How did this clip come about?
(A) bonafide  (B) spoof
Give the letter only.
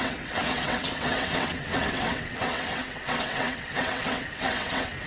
B